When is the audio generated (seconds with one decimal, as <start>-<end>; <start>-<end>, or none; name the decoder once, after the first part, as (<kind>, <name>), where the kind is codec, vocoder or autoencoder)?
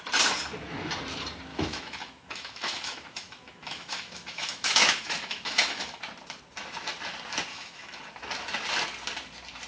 1.5-6.0 (autoencoder, DAC-VAE); 7.5-8.0